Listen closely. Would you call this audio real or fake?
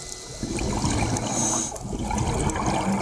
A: real